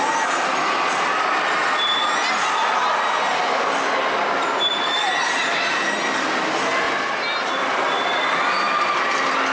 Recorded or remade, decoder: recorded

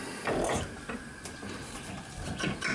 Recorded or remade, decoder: recorded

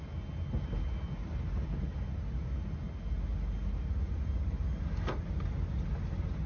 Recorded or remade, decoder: recorded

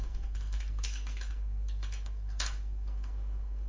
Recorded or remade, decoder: remade, codec, SNAC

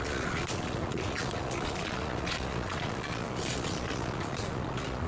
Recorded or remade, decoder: remade, vocoder, Vocos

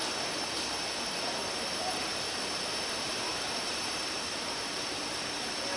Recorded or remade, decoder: remade, vocoder, BigVGAN v2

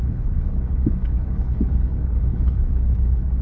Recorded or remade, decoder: remade, codec, HILCodec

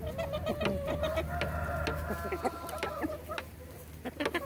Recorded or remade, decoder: recorded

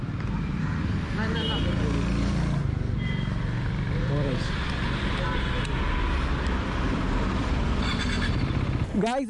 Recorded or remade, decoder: recorded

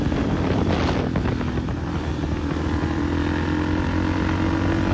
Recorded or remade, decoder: recorded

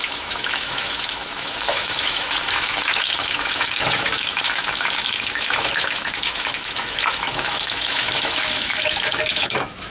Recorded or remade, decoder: remade, autoencoder, DAC-VAE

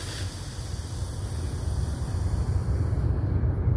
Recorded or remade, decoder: recorded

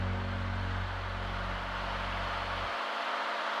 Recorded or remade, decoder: recorded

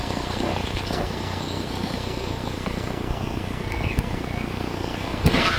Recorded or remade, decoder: remade, codec, SNAC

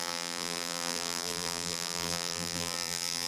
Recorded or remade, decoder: remade, vocoder, BigVGAN v2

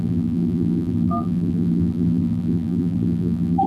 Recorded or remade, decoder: remade, vocoder, BigVGAN v2